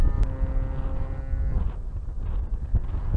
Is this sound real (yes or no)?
yes